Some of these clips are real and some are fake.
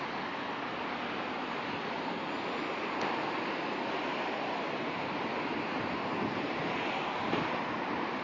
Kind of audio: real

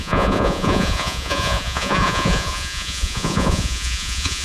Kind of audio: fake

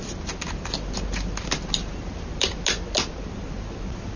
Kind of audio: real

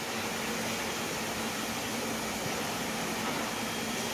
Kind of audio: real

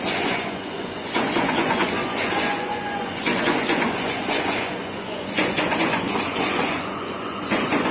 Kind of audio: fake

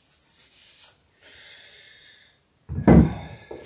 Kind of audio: real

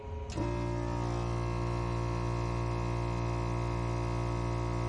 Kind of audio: real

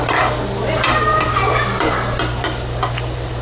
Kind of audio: real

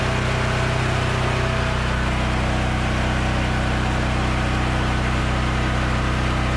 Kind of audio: real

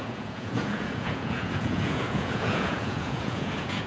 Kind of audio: fake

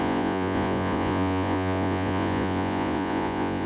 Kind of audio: fake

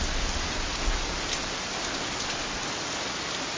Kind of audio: real